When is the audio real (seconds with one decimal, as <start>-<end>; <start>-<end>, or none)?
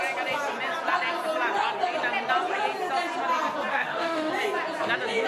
0.0-3.7; 4.3-5.3